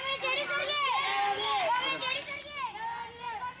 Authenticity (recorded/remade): recorded